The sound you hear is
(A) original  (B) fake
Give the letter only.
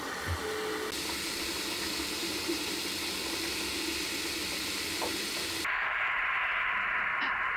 A